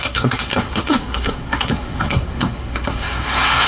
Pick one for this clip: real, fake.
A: fake